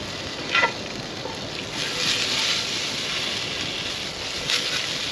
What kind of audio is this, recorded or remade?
recorded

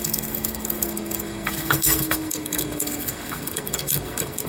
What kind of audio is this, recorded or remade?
remade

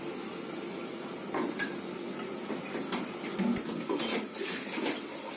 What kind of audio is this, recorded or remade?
recorded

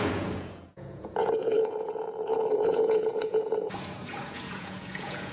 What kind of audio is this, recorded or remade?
remade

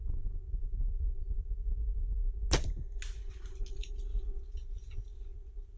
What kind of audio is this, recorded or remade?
recorded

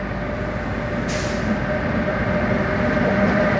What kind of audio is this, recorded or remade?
remade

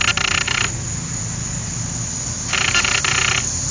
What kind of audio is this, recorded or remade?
recorded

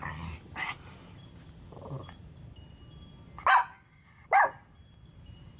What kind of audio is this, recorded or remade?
recorded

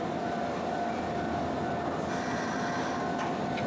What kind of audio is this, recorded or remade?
recorded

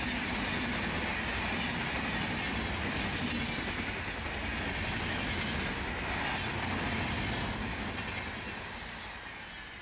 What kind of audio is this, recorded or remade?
recorded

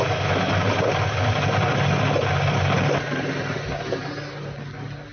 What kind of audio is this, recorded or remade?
recorded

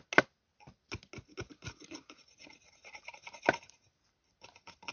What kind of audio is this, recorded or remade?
recorded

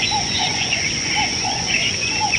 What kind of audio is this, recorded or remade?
remade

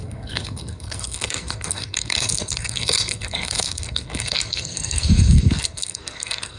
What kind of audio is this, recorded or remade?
remade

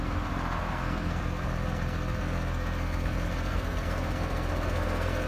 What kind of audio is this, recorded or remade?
remade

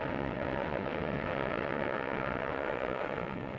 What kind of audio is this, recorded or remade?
remade